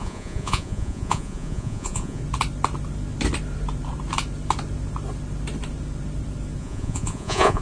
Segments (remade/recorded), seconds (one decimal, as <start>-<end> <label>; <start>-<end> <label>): 0.0-2.2 remade; 2.2-6.6 recorded; 6.6-7.6 remade